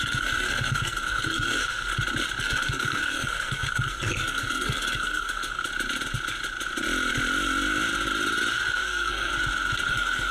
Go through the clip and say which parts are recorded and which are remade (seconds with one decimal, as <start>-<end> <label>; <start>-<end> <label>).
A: 0.0-1.9 remade; 1.9-2.4 recorded; 2.4-5.6 remade; 5.6-8.7 recorded; 8.7-9.3 remade; 9.3-9.9 recorded; 9.9-10.3 remade